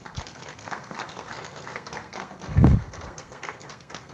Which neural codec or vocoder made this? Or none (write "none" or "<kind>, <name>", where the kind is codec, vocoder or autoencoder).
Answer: codec, SNAC